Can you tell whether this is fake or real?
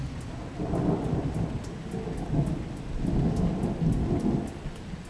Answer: real